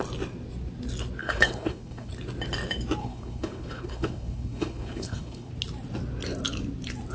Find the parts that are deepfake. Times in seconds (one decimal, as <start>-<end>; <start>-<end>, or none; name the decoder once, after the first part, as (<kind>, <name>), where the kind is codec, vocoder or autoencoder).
1.2-2.1 (codec, HILCodec); 3.0-5.5